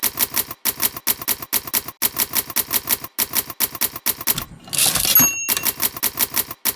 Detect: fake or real real